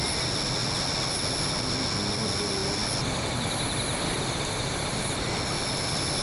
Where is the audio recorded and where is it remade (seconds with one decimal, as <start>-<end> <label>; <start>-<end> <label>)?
0.0-6.2 recorded